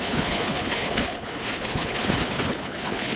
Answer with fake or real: fake